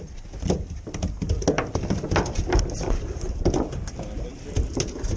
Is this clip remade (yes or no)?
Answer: no